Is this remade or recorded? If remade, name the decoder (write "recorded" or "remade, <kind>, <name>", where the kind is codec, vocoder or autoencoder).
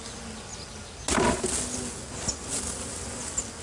recorded